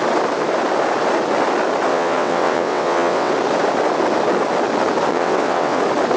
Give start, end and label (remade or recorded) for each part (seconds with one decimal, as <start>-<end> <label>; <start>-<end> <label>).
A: 0.0-1.9 recorded; 1.9-3.3 remade; 3.3-5.1 recorded; 5.1-5.8 remade; 5.8-6.2 recorded